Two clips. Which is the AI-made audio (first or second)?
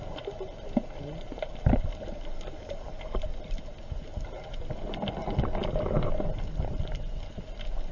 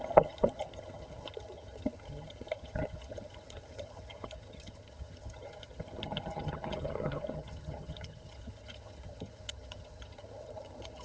second